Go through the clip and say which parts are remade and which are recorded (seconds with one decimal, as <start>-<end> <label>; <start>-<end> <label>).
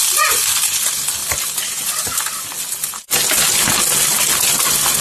0.0-1.2 recorded; 1.2-2.4 remade; 2.4-5.0 recorded